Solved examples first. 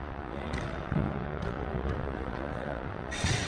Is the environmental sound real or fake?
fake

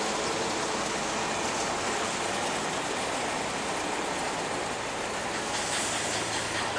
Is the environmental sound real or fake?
real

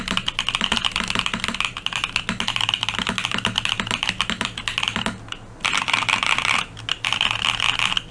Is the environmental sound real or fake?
real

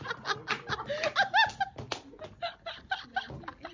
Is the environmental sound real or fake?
real